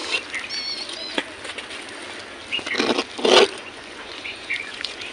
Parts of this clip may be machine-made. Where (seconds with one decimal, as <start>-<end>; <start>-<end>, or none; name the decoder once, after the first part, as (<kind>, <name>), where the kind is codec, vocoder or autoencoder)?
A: 0.7-1.2 (vocoder, Vocos); 3.6-5.1